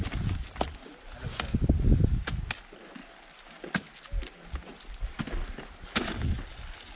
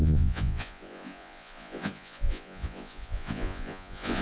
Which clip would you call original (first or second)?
first